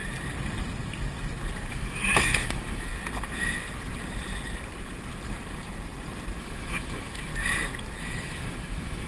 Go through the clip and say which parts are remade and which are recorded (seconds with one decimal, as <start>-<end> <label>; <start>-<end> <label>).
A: 0.0-1.7 recorded; 1.7-2.9 remade; 2.9-6.4 recorded; 6.4-7.3 remade; 7.3-8.0 recorded; 8.0-9.1 remade